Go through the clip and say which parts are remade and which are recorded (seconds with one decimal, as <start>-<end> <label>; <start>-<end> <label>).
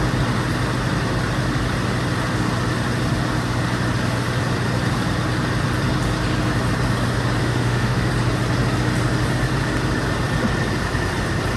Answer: 0.0-7.4 recorded; 7.4-8.1 remade; 8.1-11.6 recorded